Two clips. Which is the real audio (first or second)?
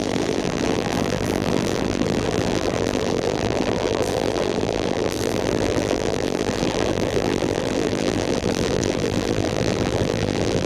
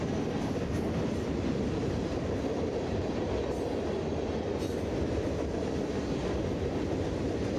second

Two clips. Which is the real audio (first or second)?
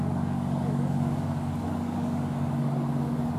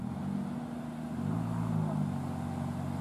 second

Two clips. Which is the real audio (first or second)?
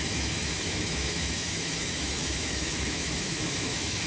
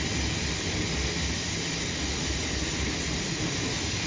second